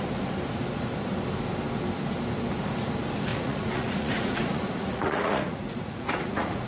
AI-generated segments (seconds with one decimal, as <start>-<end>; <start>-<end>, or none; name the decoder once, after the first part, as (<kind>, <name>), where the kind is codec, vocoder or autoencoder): 3.3-6.7 (vocoder, Vocos)